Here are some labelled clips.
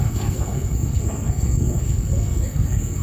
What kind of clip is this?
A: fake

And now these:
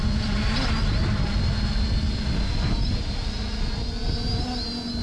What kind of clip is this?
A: real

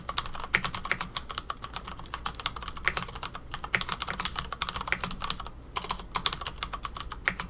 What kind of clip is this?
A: real